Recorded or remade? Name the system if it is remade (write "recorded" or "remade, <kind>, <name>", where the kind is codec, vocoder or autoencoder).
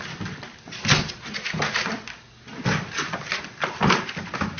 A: recorded